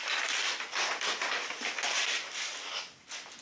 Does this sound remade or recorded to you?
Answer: recorded